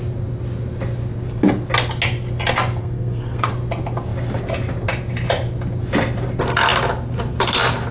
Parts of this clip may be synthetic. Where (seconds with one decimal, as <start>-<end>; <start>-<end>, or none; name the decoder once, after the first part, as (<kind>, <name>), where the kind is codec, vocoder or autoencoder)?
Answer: 2.8-3.5 (codec, SNAC)